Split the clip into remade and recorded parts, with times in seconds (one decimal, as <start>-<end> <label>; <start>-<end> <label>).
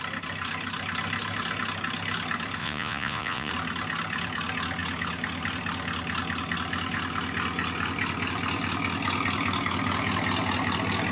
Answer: 0.0-2.6 recorded; 2.6-3.5 remade; 3.5-11.1 recorded